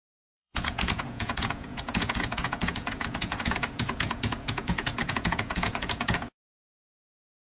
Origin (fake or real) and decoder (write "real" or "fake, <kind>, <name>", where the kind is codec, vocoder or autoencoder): fake, vocoder, Vocos